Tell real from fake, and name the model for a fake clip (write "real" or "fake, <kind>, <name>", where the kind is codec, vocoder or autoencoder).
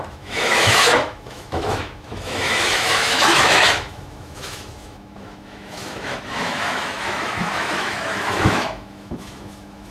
fake, autoencoder, DAC-VAE